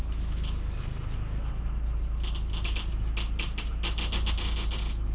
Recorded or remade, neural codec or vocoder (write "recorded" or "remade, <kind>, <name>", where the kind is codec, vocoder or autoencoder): recorded